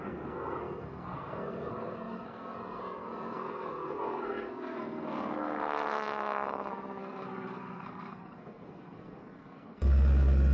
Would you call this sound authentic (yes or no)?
no